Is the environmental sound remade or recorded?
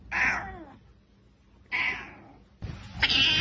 recorded